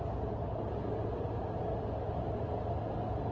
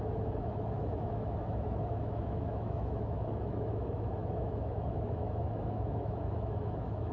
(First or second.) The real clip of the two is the first